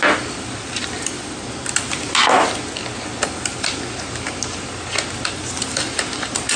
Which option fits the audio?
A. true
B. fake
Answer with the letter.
A